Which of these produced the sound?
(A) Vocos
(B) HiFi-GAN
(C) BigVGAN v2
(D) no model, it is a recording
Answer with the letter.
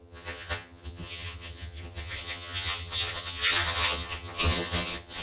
B